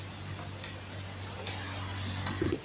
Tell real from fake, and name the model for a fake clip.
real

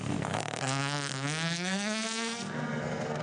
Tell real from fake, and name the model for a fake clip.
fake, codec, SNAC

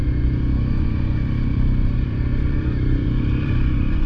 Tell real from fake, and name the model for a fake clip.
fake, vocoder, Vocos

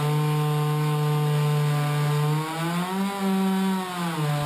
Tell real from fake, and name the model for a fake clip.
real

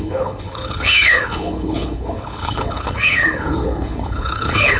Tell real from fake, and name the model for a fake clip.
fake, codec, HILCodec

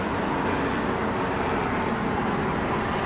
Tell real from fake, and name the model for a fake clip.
real